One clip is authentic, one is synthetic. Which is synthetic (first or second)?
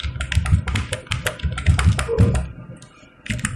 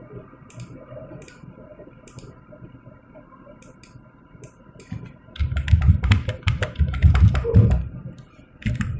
second